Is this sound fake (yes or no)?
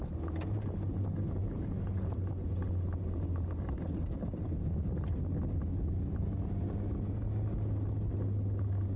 no